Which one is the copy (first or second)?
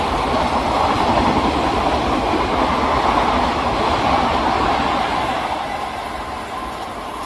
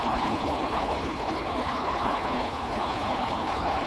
second